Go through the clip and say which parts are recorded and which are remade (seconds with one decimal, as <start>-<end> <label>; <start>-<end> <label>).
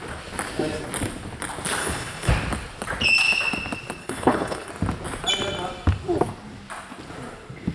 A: 0.0-1.8 recorded; 1.8-2.3 remade; 2.3-4.0 recorded; 4.0-4.7 remade; 4.7-7.7 recorded